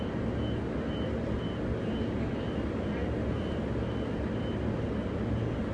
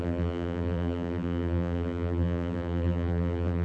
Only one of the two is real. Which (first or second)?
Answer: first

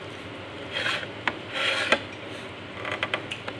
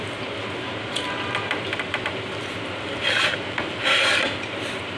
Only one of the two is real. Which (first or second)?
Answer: first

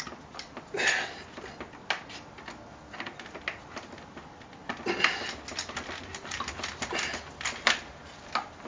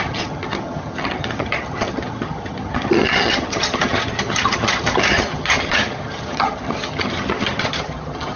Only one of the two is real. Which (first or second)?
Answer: first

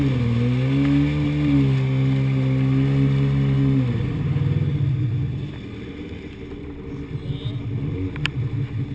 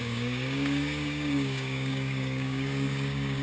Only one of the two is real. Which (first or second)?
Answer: first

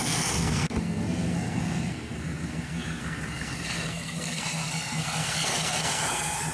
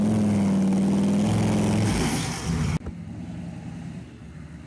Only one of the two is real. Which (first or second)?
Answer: second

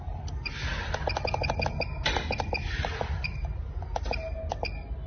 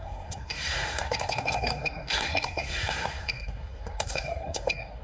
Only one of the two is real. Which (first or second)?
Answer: first